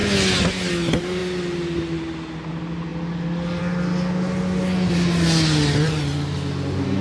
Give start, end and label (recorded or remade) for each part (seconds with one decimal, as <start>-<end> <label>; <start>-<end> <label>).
0.0-7.0 recorded